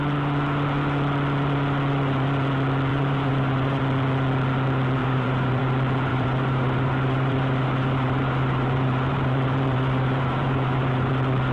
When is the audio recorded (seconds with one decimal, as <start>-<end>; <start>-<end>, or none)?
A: 0.0-2.9; 3.8-5.0; 5.6-6.1; 11.1-11.5